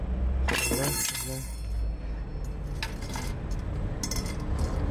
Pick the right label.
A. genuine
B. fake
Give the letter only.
A